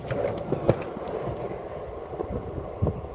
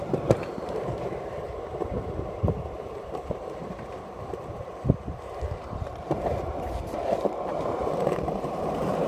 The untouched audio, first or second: first